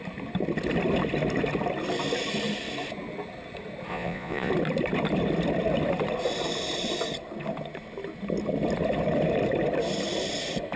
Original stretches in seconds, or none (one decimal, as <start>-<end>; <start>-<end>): 0.0-3.9; 4.5-10.8